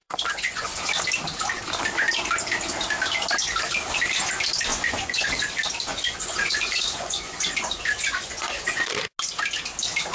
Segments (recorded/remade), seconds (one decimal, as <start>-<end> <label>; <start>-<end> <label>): 0.0-0.8 remade; 0.8-4.7 recorded; 4.7-5.5 remade; 5.5-5.9 recorded; 5.9-8.9 remade; 8.9-10.1 recorded